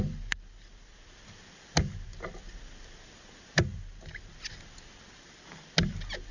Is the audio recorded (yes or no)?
yes